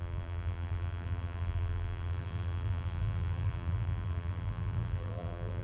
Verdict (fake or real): fake